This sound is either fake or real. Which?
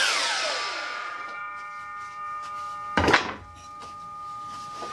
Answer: real